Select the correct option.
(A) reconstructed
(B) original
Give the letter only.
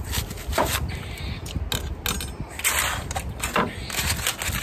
B